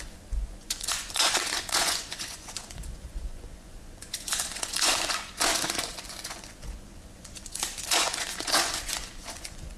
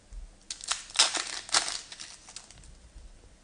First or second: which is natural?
second